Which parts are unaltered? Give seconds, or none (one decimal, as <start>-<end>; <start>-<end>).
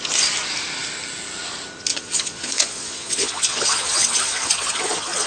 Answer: 0.0-1.9